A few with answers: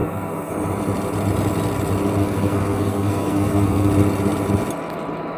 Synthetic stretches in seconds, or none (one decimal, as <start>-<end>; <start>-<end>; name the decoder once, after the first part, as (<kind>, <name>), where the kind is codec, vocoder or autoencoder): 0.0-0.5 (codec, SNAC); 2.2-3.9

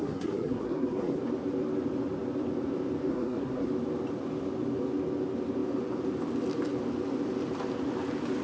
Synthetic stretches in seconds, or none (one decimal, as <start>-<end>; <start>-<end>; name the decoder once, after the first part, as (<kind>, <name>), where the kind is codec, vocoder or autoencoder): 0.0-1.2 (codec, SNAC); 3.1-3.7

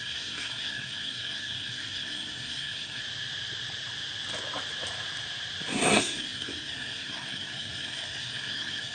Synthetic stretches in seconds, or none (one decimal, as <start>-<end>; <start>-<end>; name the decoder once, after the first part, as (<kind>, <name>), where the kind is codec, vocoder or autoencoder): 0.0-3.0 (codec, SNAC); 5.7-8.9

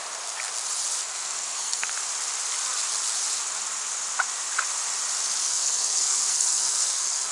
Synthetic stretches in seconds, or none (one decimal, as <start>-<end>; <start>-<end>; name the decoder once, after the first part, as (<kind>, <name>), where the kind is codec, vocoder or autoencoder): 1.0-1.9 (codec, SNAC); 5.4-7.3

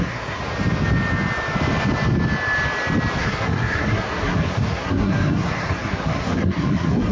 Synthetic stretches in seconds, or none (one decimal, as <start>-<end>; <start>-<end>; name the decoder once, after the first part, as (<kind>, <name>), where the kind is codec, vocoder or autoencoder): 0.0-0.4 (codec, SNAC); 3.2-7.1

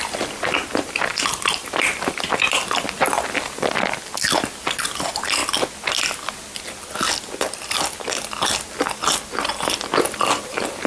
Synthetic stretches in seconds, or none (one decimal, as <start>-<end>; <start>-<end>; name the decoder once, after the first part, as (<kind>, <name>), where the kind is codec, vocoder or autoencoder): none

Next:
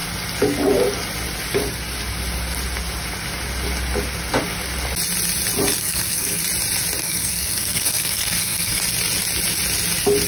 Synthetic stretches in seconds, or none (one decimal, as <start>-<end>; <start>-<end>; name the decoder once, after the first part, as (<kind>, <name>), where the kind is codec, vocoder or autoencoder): 5.8-6.4 (codec, SNAC); 7.0-8.8

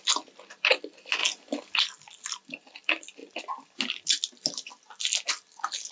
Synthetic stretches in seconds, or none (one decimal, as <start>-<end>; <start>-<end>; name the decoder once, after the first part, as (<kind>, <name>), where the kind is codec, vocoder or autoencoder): none